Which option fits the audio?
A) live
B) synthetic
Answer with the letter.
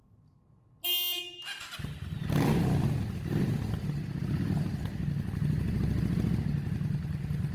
A